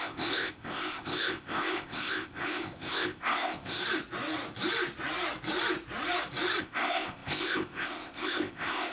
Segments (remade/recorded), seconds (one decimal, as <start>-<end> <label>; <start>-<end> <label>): 0.0-3.8 remade; 3.8-6.6 recorded; 6.6-8.9 remade